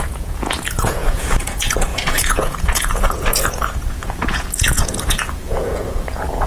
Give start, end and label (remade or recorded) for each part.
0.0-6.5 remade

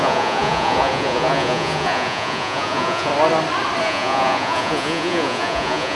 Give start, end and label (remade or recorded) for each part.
0.0-3.1 remade; 3.1-3.8 recorded; 3.8-6.0 remade

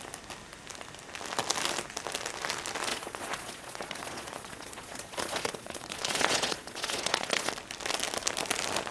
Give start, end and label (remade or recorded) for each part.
0.0-2.9 recorded; 2.9-7.5 remade; 7.5-8.9 recorded

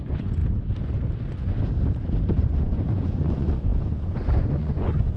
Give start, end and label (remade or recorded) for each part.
0.0-0.4 remade; 0.4-2.4 recorded; 2.4-5.2 remade

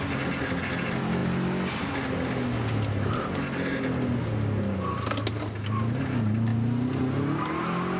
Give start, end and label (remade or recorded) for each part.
0.0-8.0 recorded

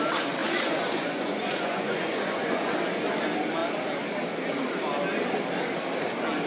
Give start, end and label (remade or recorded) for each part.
0.0-0.4 recorded; 0.4-2.7 remade; 2.7-6.5 recorded

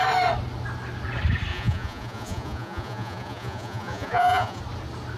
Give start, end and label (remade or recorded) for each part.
0.0-1.5 recorded; 1.5-4.6 remade; 4.6-5.2 recorded

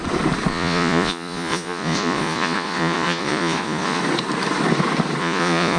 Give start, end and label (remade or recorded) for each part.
0.0-0.5 recorded; 0.5-4.0 remade; 4.0-5.2 recorded; 5.2-5.8 remade